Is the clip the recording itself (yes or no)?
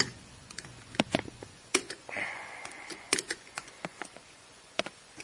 no